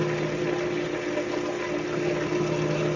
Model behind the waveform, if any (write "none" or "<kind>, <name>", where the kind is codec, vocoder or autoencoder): none